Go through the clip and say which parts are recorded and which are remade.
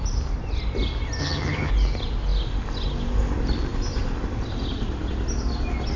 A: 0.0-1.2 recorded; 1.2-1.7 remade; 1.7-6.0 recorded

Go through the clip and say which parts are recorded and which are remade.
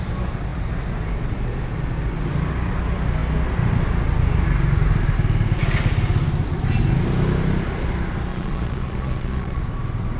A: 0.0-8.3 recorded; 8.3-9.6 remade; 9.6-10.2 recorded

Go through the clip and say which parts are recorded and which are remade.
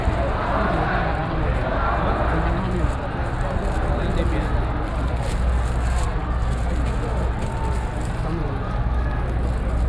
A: 0.0-9.9 recorded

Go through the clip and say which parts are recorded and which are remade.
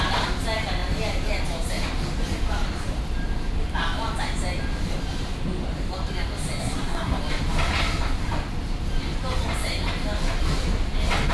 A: 0.0-6.6 recorded; 6.6-7.2 remade; 7.2-11.3 recorded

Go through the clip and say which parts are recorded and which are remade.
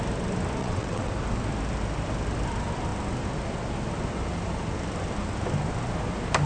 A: 0.0-0.6 recorded; 0.6-1.1 remade; 1.1-6.5 recorded